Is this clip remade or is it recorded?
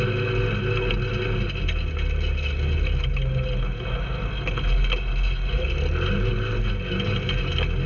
recorded